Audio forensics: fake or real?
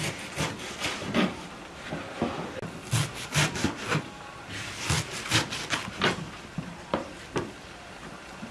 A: real